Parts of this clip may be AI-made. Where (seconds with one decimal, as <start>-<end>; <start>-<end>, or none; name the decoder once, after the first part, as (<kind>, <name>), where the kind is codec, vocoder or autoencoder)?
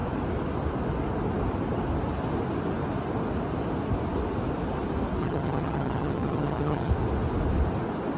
5.2-6.9 (vocoder, HiFi-GAN)